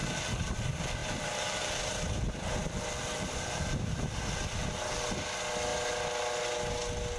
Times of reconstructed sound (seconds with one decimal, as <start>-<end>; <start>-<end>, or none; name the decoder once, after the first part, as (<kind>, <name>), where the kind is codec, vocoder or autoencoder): 0.0-0.5 (vocoder, BigVGAN v2); 1.0-4.0